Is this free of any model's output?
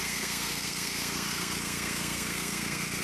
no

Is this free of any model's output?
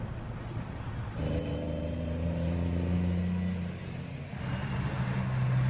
yes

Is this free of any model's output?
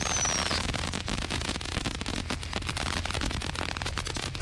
yes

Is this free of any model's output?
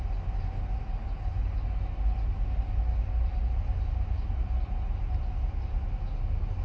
yes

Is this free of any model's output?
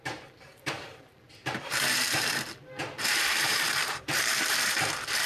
no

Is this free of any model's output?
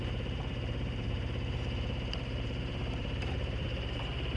no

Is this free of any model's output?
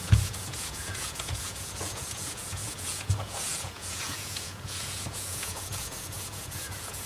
no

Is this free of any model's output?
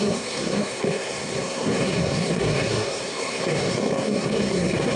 no